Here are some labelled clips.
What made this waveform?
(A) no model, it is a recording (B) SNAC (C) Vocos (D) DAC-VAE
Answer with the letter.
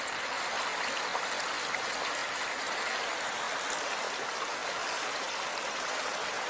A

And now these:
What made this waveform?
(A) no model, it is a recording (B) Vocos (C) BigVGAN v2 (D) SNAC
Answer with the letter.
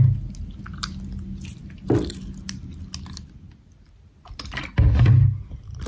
A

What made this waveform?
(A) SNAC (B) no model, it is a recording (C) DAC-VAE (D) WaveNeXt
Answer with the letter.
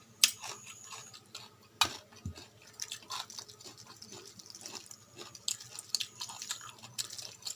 B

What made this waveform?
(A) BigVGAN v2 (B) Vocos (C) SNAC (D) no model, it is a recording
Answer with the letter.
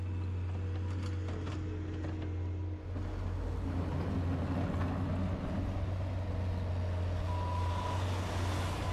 D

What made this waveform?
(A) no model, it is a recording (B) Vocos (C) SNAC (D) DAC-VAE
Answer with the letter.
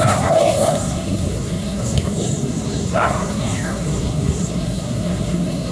C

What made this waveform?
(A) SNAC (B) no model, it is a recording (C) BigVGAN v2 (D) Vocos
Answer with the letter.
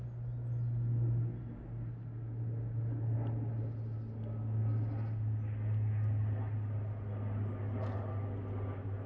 B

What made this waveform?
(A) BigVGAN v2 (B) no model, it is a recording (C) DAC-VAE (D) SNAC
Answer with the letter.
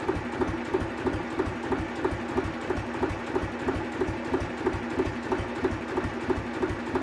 B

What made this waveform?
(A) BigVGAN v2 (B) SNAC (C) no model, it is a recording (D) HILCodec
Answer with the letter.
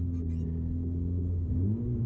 C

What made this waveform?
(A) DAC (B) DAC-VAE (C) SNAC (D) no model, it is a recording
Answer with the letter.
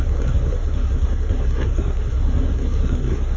C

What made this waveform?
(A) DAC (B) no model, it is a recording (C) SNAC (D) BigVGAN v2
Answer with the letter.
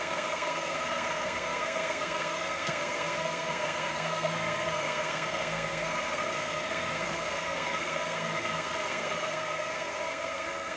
C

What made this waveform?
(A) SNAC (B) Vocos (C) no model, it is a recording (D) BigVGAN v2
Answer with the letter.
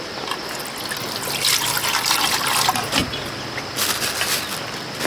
C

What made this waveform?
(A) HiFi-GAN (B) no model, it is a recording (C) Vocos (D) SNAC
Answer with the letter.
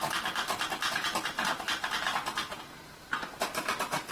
B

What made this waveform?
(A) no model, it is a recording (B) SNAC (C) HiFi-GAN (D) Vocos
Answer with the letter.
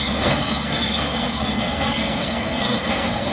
B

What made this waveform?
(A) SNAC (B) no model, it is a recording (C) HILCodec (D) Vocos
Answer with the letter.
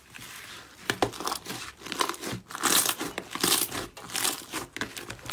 B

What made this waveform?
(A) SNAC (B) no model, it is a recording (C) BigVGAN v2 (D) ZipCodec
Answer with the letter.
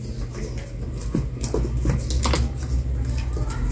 B